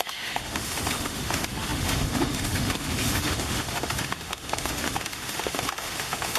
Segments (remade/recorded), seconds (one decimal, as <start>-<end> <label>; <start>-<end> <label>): 0.0-6.4 remade